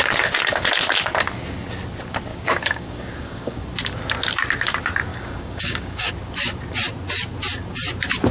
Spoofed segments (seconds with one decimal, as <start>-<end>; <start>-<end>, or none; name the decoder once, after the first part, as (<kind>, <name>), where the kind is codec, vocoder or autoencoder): 2.3-3.6 (codec, DAC); 5.1-6.1

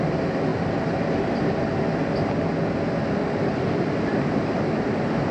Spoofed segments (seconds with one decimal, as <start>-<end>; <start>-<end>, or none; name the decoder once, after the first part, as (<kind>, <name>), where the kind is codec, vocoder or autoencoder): none

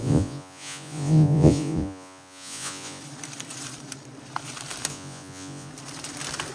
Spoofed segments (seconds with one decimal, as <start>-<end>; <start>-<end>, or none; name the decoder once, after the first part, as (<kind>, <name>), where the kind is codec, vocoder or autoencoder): 0.0-3.0 (vocoder, Vocos); 4.9-5.7

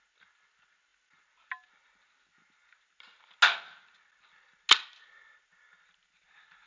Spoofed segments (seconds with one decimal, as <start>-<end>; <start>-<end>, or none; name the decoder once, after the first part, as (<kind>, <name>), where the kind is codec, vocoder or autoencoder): none

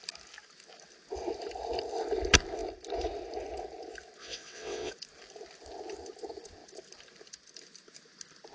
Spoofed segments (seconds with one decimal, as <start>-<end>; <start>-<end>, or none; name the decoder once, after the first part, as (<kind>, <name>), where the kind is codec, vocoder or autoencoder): 4.2-4.9 (vocoder, WaveNeXt)

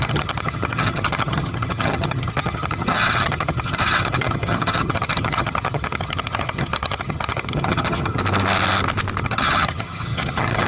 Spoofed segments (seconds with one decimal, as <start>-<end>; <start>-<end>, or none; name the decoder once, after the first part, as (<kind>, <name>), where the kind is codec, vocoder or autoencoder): 0.0-8.2 (vocoder, HiFi-GAN); 9.2-10.7

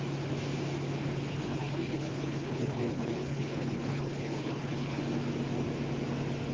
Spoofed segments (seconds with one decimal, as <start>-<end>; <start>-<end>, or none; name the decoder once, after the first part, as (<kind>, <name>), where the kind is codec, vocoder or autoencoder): 1.3-5.0 (codec, HILCodec)

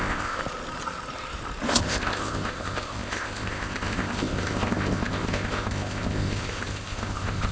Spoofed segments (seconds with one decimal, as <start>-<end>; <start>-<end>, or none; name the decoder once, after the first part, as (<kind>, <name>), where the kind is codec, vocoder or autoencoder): 0.0-0.4 (codec, ZipCodec); 1.7-7.5